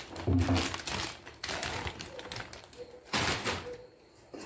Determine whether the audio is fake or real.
real